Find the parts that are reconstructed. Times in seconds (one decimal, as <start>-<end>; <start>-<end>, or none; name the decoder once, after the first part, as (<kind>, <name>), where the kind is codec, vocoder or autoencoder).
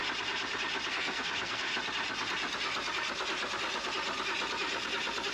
0.9-1.7 (codec, SNAC)